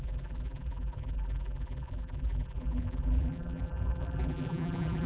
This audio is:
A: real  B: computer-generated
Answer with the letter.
B